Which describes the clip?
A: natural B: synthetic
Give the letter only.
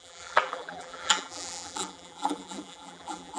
B